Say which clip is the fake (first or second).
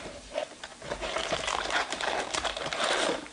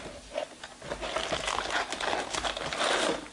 first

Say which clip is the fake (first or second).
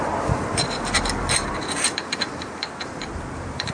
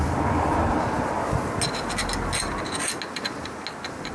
first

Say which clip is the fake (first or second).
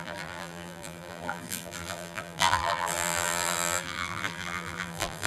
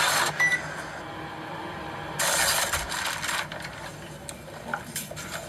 first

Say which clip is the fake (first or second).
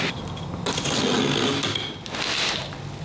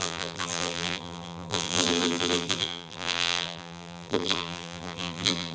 second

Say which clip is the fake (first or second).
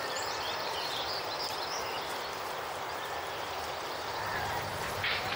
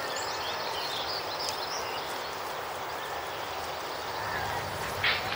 first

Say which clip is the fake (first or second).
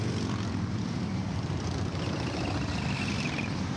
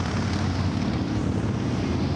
first